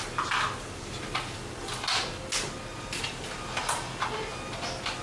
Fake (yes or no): no